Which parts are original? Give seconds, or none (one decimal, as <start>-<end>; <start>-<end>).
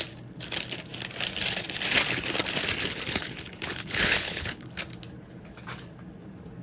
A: 0.0-2.8; 4.7-6.6